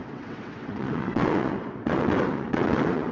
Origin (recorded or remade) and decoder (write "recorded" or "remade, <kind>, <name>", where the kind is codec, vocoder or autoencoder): remade, vocoder, WaveNeXt